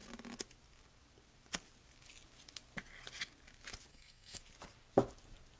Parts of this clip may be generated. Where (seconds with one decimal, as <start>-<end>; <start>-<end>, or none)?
3.9-4.4